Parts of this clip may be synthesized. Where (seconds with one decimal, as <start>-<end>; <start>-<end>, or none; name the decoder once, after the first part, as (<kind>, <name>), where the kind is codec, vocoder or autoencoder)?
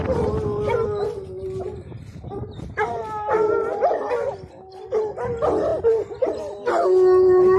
none